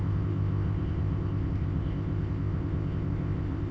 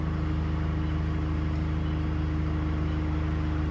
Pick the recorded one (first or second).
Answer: second